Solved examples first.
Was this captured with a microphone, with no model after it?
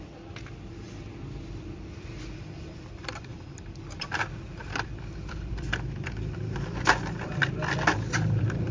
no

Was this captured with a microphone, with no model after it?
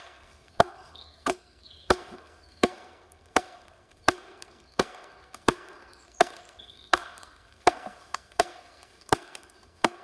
no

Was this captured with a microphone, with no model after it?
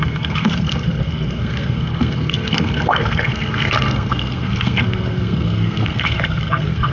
no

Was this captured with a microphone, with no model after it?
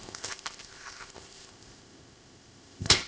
no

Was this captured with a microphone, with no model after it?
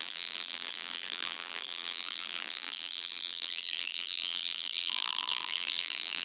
no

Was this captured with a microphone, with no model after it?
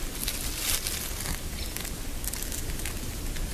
yes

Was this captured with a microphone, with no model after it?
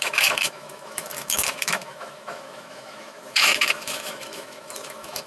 no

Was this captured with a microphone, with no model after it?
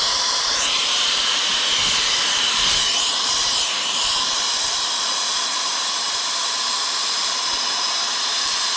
no